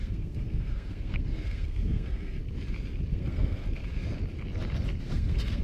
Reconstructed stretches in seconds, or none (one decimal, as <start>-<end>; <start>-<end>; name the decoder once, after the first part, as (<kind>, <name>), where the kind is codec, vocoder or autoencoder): 0.0-2.4 (codec, SNAC); 3.1-3.6; 5.0-5.6